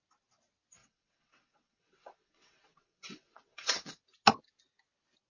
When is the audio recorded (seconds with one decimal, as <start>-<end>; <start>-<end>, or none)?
0.0-0.8; 4.0-5.3